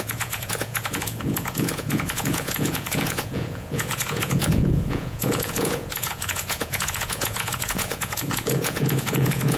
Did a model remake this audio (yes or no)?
yes